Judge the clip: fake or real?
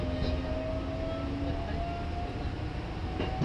real